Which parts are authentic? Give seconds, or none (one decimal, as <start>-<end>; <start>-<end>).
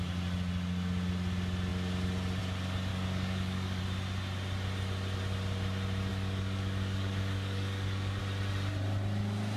0.0-2.9; 3.8-6.1; 8.2-9.6